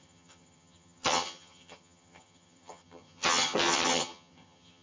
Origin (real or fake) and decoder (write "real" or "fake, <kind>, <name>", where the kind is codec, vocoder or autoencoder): fake, vocoder, HiFi-GAN